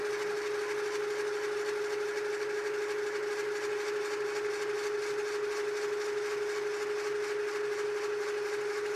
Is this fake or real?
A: real